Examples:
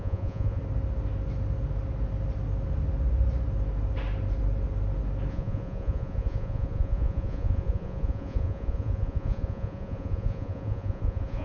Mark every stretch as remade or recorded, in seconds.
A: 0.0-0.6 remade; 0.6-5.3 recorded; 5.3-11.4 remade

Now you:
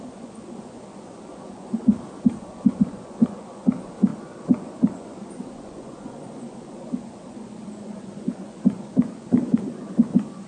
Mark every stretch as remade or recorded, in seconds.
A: 0.0-1.9 remade; 1.9-2.4 recorded; 2.4-10.5 remade

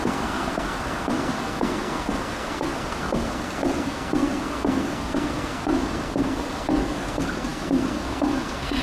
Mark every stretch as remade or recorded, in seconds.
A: 0.0-8.8 remade

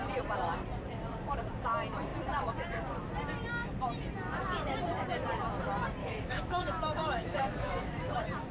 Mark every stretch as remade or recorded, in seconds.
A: 0.0-6.0 recorded; 6.0-8.1 remade; 8.1-8.5 recorded